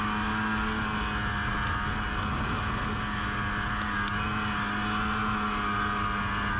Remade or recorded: recorded